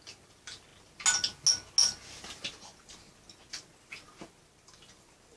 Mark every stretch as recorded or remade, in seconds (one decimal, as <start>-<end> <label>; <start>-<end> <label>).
0.0-5.4 recorded